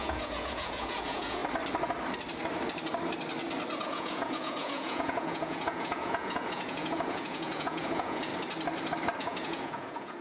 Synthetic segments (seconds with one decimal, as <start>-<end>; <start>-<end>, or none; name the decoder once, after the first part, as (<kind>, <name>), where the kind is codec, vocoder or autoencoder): 0.0-1.4 (vocoder, Vocos); 3.8-8.3; 9.2-10.2